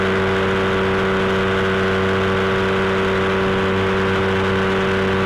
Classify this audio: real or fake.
real